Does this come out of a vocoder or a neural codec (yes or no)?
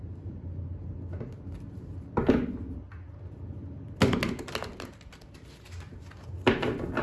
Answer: no